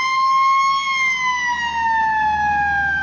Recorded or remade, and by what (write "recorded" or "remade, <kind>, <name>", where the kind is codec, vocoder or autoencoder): recorded